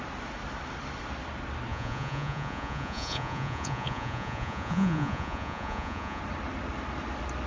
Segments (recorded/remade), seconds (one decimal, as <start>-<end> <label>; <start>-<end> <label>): 0.0-1.7 recorded; 1.7-6.2 remade; 6.2-7.5 recorded